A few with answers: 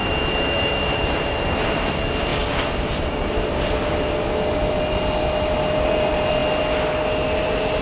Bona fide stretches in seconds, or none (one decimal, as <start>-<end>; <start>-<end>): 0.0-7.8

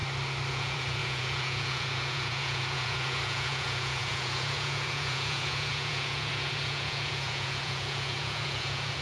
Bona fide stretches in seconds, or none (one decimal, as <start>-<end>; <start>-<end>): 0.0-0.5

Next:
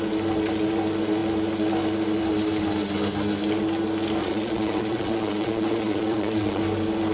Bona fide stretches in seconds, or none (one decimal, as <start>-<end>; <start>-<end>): 0.0-4.2; 6.6-7.1

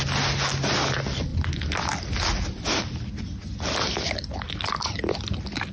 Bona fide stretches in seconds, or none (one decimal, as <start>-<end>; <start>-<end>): 0.0-5.7

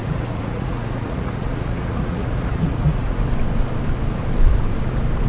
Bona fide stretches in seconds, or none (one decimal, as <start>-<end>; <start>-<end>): 3.2-5.3

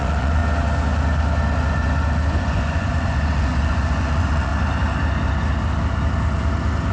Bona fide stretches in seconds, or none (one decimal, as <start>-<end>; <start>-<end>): 0.4-2.3; 4.5-6.9